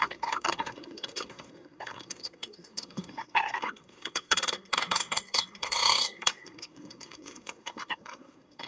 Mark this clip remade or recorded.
remade